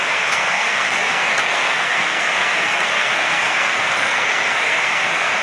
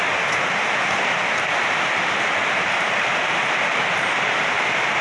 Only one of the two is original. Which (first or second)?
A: second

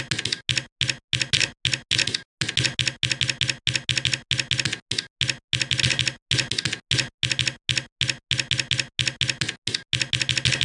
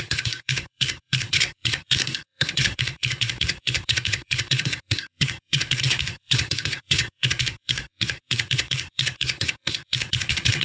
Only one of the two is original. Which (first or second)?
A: first